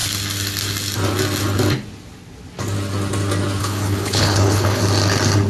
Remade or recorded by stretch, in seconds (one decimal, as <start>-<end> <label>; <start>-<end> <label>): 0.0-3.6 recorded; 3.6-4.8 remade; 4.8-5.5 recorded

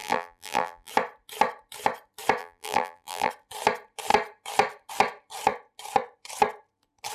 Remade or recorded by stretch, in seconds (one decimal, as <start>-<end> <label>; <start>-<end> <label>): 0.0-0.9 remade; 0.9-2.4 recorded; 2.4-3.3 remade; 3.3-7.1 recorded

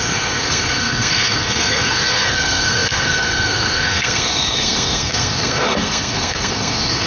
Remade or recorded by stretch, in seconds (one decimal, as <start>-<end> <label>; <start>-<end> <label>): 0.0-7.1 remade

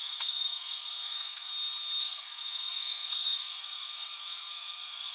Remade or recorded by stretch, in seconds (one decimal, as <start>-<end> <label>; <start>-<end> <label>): 0.0-1.5 remade; 1.5-2.0 recorded; 2.0-5.1 remade

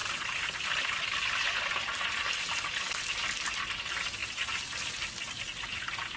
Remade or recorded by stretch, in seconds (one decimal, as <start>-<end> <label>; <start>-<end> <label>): 0.0-6.2 recorded

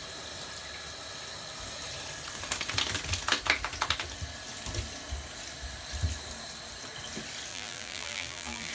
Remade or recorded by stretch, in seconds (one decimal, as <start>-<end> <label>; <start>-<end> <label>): 0.0-7.5 recorded; 7.5-8.7 remade

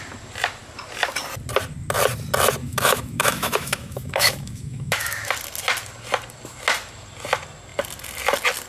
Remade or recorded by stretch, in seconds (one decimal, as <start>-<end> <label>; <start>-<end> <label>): 0.0-2.6 recorded; 2.6-5.3 remade; 5.3-8.7 recorded